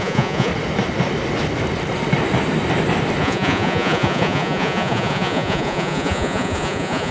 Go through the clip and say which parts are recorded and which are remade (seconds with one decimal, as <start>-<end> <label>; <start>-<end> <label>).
0.0-0.5 remade; 0.5-3.2 recorded; 3.2-7.1 remade